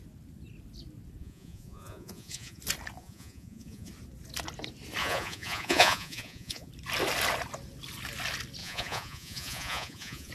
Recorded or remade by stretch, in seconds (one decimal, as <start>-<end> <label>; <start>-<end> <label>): 0.0-1.2 recorded; 1.2-2.6 remade; 2.6-3.0 recorded; 3.0-3.9 remade; 3.9-5.0 recorded; 5.0-6.7 remade; 6.7-8.6 recorded; 8.6-10.3 remade